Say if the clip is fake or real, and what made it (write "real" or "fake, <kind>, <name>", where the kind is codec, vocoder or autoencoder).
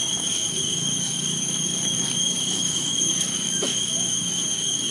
fake, codec, DAC